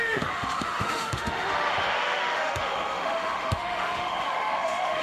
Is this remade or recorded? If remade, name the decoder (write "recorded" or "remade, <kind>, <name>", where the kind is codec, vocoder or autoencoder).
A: remade, autoencoder, DAC-VAE